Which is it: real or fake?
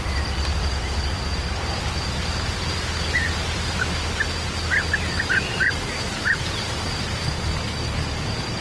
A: fake